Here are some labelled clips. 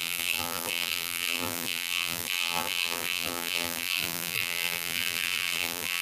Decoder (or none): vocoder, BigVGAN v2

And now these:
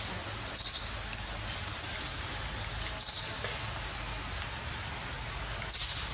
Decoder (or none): none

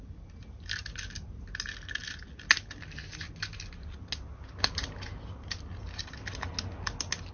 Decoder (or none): none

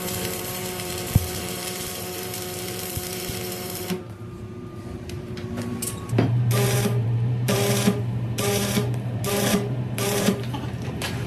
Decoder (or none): vocoder, BigVGAN v2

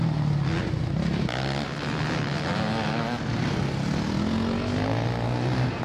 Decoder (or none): none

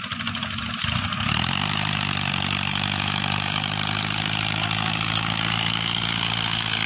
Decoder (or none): none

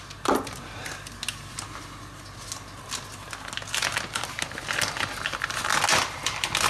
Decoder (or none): none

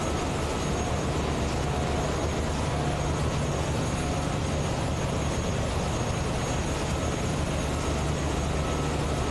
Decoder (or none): none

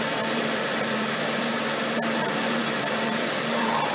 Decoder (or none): vocoder, BigVGAN v2